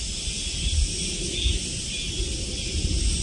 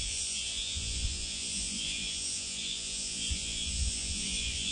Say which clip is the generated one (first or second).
second